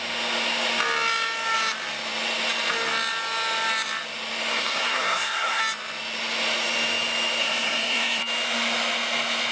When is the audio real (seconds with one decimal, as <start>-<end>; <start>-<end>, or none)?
0.0-4.5; 5.6-7.4; 8.2-9.5